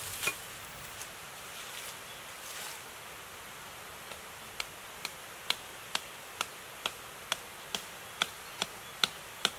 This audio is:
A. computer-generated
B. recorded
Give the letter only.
B